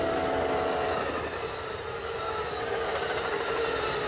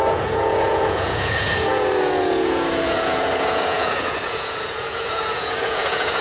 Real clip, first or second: first